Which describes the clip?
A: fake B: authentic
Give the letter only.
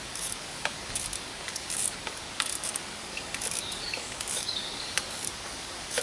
A